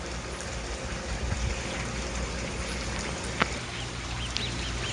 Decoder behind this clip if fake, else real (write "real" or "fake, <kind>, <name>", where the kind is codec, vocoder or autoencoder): real